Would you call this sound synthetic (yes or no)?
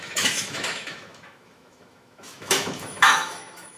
yes